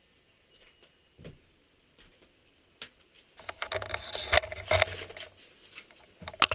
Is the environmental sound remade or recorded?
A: recorded